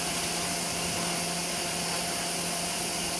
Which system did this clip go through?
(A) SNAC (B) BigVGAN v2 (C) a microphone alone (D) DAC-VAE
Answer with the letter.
C